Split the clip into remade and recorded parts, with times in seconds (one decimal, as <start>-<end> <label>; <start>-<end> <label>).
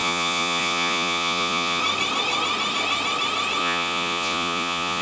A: 0.0-1.8 remade; 1.8-3.6 recorded; 3.6-5.0 remade